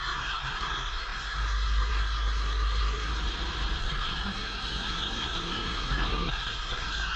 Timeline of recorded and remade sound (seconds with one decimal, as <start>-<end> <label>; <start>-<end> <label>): 0.0-3.1 remade; 3.1-3.8 recorded; 3.8-7.2 remade